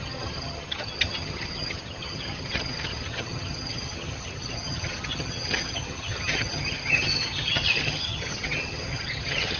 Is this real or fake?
fake